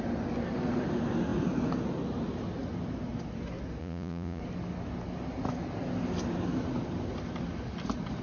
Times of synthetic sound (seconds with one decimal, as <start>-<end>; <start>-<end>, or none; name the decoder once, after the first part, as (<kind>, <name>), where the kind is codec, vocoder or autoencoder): 3.8-4.4 (vocoder, Vocos)